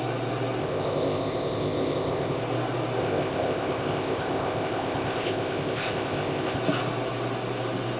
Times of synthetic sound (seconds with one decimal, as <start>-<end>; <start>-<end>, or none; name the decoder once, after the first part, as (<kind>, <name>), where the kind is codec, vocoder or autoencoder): 0.6-2.4 (codec, ZipCodec); 3.0-6.6